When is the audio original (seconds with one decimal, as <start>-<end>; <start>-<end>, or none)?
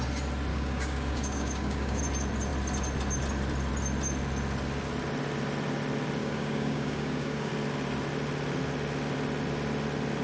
0.0-0.5; 2.0-6.2; 7.5-10.2